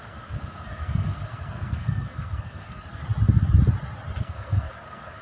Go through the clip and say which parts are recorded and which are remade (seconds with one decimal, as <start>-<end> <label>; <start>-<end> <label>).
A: 0.0-3.0 remade; 3.0-4.2 recorded; 4.2-5.2 remade